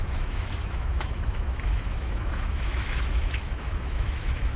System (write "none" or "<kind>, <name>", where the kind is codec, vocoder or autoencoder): autoencoder, DAC-VAE